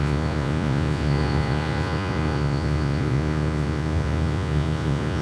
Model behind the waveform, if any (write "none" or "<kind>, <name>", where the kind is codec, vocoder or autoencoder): vocoder, Vocos